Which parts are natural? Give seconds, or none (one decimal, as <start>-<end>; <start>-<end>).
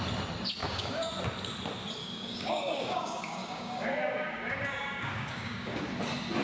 0.0-0.6; 1.1-2.0; 5.8-6.4